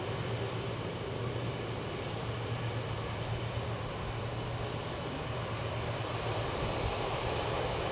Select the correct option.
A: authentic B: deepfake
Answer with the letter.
A